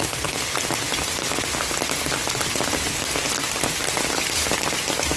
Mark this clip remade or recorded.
recorded